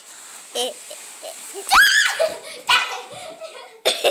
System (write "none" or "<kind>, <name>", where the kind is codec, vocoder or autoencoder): vocoder, BigVGAN v2